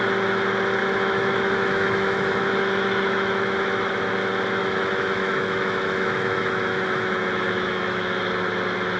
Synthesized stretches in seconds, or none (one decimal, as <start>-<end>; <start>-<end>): 0.8-4.1; 4.6-8.2